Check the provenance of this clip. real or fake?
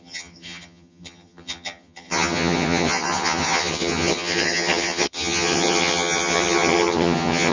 fake